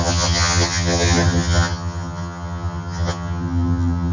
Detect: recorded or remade remade